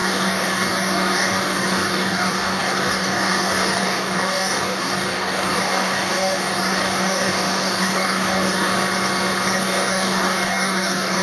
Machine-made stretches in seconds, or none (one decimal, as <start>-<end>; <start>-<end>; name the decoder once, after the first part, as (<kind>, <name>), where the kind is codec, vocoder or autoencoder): 0.0-8.7 (codec, DAC); 9.6-11.2